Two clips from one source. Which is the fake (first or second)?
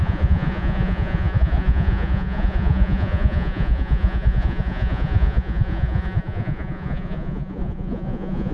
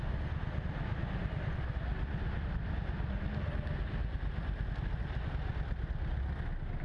first